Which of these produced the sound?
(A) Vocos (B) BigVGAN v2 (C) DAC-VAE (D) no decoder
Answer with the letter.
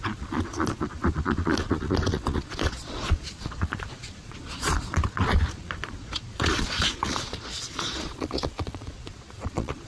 A